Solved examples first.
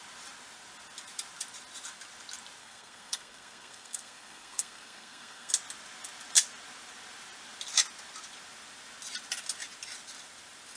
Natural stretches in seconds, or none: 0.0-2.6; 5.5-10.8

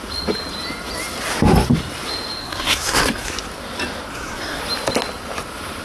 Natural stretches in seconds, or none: 0.0-2.4; 3.3-4.1; 4.6-5.8

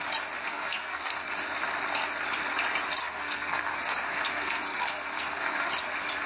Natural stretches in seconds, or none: 0.0-0.4; 1.3-3.0; 5.7-6.3

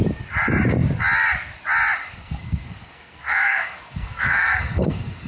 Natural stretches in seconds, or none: 0.0-2.0

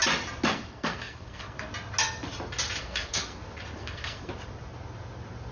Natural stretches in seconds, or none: 0.0-0.5; 1.7-2.8; 3.4-3.8; 4.3-5.5

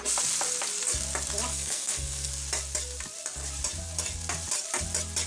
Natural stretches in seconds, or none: 0.0-1.5; 2.3-5.3

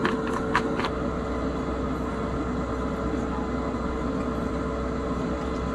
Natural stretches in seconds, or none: 0.0-5.7

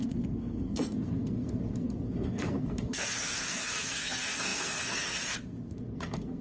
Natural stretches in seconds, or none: none